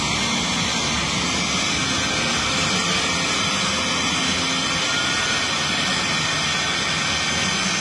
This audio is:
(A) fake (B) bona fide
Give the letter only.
B